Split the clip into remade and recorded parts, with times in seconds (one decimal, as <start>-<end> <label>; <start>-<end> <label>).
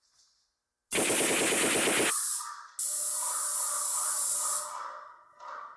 0.0-5.8 recorded